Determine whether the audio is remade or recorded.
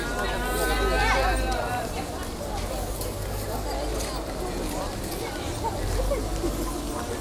recorded